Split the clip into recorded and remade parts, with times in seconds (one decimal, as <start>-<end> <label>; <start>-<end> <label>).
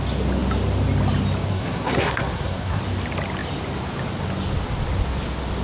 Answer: 0.0-1.5 recorded; 1.5-2.8 remade; 2.8-5.6 recorded